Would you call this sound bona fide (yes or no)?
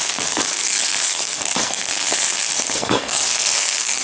no